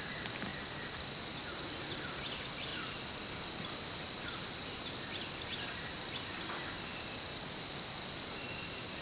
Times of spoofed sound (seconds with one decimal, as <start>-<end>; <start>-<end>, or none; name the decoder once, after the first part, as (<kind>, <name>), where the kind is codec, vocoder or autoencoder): none